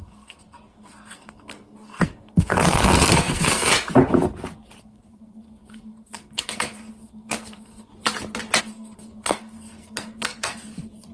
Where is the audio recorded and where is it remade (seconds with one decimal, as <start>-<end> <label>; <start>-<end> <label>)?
0.0-3.7 remade; 3.7-4.8 recorded; 4.8-7.9 remade; 7.9-8.6 recorded; 8.6-11.1 remade